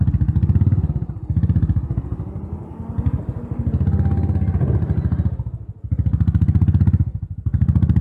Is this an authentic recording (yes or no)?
yes